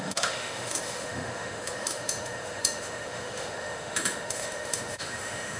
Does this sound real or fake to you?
fake